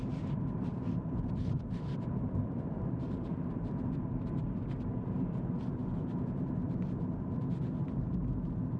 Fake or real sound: fake